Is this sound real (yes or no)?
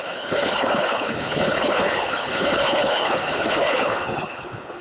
no